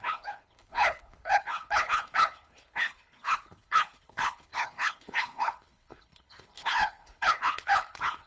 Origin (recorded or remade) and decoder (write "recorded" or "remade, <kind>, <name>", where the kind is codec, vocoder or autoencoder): remade, codec, HILCodec